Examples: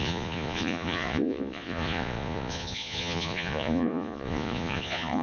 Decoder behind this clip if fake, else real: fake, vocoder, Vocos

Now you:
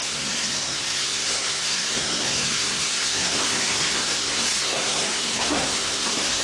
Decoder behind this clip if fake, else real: fake, codec, SNAC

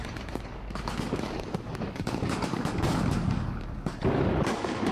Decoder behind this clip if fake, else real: fake, codec, DAC